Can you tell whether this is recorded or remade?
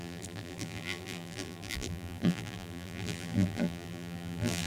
remade